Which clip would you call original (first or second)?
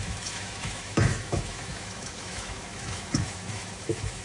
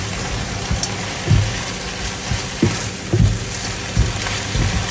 second